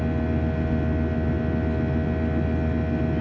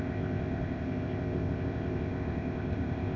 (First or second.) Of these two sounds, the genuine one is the first